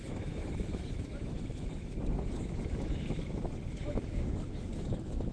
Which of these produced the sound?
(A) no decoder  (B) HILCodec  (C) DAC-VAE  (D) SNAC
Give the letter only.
C